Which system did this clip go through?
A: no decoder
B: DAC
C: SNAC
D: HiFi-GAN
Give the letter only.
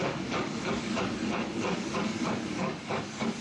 B